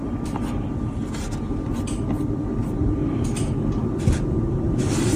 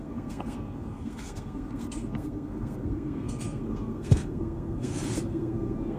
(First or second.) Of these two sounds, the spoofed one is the second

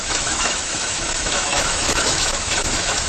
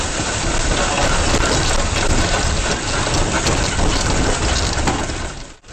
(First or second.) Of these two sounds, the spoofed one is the first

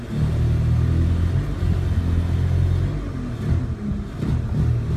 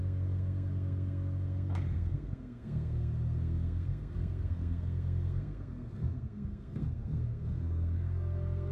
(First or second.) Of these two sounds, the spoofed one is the second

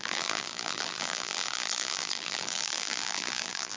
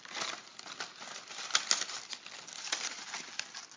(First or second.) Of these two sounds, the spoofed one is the first